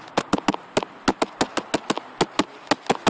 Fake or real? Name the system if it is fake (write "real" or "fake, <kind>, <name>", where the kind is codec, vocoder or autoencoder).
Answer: real